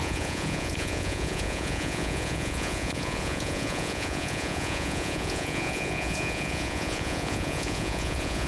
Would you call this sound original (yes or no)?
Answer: no